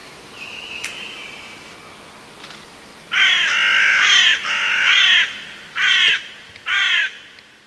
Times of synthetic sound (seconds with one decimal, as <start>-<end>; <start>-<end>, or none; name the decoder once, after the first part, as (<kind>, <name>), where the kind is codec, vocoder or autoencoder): 0.0-0.9 (autoencoder, DAC-VAE)